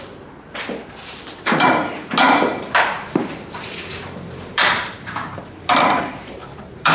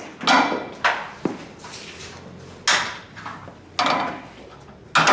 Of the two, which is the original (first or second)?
second